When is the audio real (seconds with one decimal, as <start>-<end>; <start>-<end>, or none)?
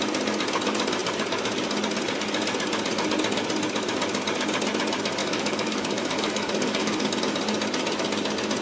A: 0.0-5.2; 7.2-8.6